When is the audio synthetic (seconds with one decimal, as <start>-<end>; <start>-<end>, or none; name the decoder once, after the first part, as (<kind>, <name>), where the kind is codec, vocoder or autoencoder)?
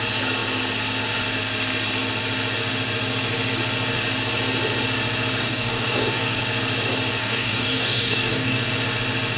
5.4-6.4 (codec, DAC); 7.2-8.7